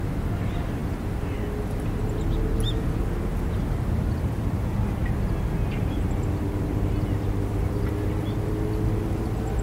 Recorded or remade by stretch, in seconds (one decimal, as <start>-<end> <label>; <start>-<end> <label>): 0.0-9.6 recorded